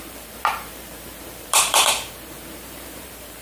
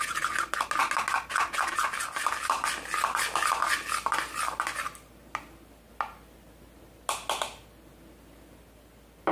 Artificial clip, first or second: first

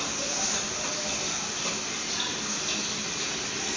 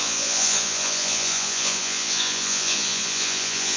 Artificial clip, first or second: second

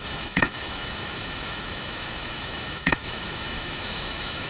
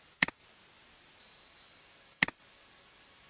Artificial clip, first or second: first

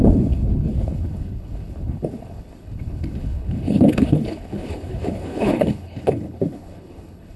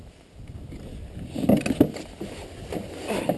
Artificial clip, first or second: first